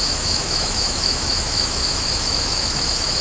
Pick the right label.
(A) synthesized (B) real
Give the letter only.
A